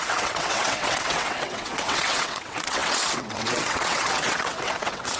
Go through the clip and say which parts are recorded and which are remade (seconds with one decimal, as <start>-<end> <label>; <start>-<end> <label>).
0.0-5.2 remade